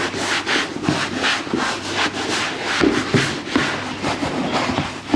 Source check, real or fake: real